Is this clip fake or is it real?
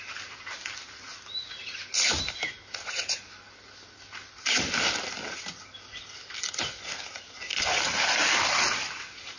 real